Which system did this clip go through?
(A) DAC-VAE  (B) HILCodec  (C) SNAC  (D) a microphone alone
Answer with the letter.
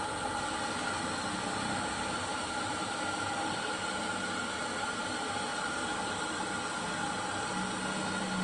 D